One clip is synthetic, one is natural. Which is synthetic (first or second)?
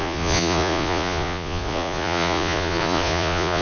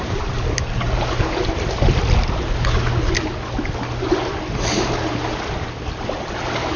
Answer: first